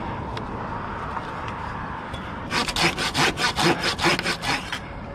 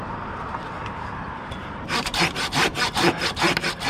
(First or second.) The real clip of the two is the first